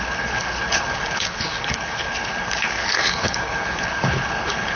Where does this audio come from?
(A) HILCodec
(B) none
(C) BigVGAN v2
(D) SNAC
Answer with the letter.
A